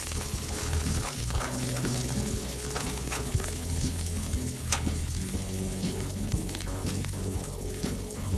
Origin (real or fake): fake